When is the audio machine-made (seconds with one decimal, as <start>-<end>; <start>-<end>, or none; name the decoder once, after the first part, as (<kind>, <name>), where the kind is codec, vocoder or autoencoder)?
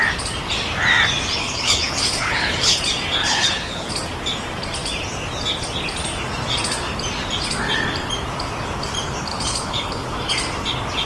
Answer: 1.4-2.8 (codec, HILCodec); 3.2-3.9; 9.3-10.1